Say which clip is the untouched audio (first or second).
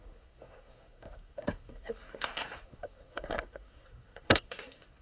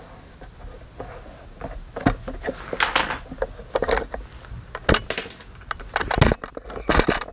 second